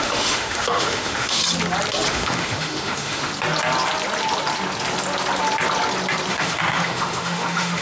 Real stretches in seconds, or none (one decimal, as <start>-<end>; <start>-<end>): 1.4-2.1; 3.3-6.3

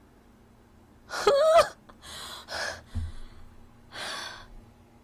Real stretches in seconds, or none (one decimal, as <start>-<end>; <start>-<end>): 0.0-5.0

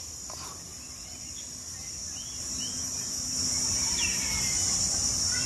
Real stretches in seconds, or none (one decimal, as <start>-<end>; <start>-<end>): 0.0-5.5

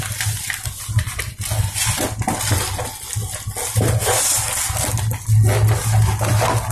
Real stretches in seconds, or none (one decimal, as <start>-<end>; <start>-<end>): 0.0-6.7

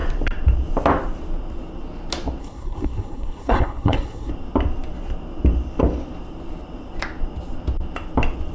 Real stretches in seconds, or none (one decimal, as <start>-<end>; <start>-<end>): 0.0-2.4; 4.3-8.5

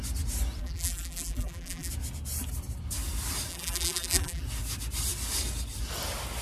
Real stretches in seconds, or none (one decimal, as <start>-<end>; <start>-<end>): 0.0-0.6; 1.9-3.5; 4.4-6.4

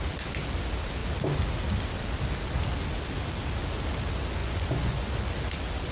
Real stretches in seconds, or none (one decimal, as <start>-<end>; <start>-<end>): 0.0-4.4; 5.1-5.9